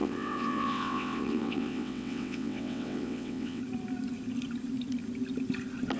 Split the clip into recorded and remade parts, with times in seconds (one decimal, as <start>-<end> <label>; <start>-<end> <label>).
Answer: 0.0-3.6 remade; 3.6-6.0 recorded